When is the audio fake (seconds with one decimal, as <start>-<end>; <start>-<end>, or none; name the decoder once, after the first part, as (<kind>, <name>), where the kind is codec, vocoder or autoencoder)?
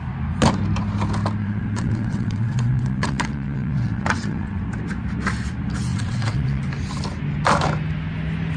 1.4-4.6 (vocoder, WaveNeXt); 5.9-6.6